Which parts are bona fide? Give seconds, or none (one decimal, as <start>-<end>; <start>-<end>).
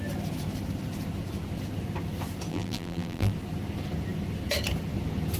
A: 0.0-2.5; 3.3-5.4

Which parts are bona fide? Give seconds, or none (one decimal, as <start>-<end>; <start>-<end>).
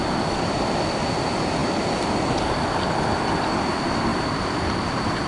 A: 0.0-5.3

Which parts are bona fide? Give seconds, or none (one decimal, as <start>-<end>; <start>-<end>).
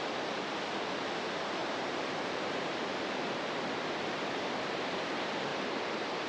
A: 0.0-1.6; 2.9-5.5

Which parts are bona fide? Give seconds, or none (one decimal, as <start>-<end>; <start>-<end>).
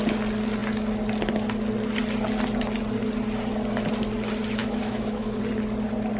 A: 0.0-4.6; 5.4-6.2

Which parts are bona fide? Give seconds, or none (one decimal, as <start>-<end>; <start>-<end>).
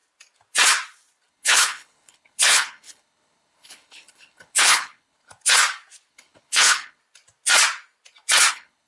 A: 0.0-1.3; 5.3-6.1; 7.0-8.5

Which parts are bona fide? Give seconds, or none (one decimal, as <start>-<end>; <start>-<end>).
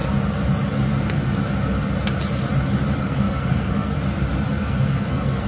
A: 0.0-3.0; 3.9-4.6